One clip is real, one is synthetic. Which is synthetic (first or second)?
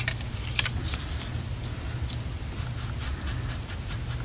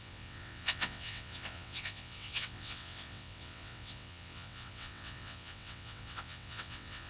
second